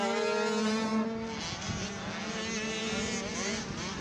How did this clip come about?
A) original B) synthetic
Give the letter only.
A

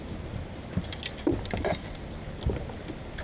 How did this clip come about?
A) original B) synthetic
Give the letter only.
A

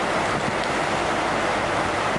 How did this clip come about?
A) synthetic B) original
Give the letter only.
B